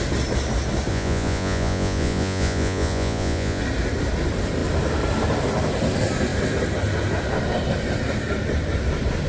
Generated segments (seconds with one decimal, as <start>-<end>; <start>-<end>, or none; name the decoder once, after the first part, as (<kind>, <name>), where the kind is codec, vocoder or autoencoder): 0.9-3.6 (vocoder, Vocos)